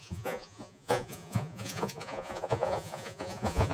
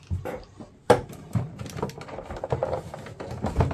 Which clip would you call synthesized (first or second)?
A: first